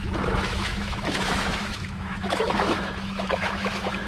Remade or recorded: remade